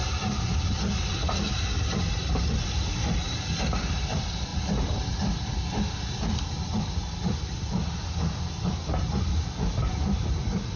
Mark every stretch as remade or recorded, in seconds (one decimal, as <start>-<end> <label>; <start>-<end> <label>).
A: 0.0-10.8 recorded